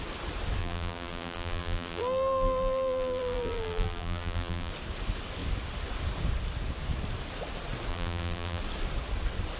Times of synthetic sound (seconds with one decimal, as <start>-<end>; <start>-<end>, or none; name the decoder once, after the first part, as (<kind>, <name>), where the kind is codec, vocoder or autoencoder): 0.6-4.7 (vocoder, BigVGAN v2); 7.9-8.6

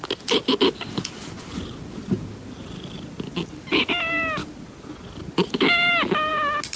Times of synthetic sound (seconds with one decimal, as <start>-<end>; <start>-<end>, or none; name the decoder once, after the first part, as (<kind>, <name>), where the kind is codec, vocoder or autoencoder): none

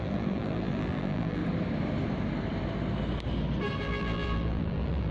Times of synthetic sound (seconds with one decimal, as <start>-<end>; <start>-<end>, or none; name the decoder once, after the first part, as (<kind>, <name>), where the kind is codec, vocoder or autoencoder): 0.0-1.4 (vocoder, BigVGAN v2); 3.8-5.1

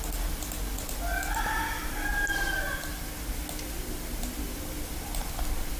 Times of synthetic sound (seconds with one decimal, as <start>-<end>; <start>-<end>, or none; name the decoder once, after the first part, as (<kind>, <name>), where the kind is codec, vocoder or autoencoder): none

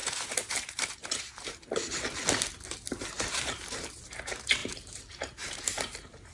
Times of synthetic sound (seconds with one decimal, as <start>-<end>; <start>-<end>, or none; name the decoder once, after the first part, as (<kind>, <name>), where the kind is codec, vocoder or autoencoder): 0.0-2.2 (vocoder, BigVGAN v2); 2.7-6.3

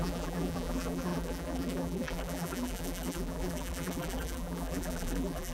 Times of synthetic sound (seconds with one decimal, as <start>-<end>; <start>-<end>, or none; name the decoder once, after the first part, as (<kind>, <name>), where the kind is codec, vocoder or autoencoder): 0.0-5.5 (vocoder, BigVGAN v2)